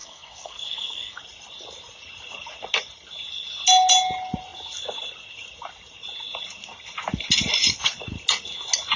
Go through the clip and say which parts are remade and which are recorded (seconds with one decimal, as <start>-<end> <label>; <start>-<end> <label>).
0.0-1.2 remade; 1.2-9.0 recorded